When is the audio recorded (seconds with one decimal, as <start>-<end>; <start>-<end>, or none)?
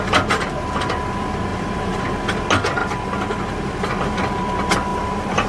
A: 0.0-1.5; 2.0-2.8; 3.4-4.9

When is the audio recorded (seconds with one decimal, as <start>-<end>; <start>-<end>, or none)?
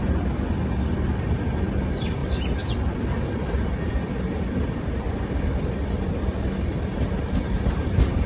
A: 0.0-2.2; 6.1-8.3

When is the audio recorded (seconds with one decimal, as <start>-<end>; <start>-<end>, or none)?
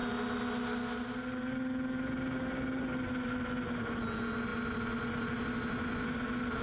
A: 0.0-6.6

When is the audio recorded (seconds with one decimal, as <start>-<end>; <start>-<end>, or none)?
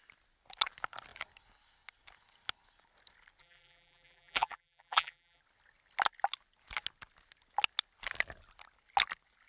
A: 0.0-3.4; 5.4-9.5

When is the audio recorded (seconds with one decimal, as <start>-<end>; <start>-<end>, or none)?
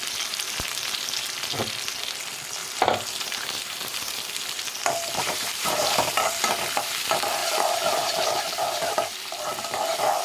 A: 0.0-2.6; 4.1-5.2; 5.8-10.2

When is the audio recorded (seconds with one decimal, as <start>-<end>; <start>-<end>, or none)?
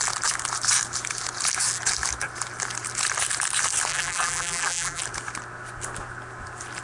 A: 0.0-3.9; 5.0-6.8